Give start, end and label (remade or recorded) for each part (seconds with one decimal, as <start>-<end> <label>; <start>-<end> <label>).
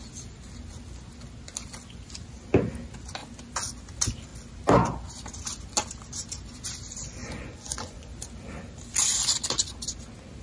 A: 0.0-7.2 recorded; 7.2-8.1 remade; 8.1-10.4 recorded